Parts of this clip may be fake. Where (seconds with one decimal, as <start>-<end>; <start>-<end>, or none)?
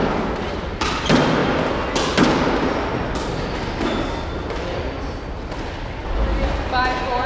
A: none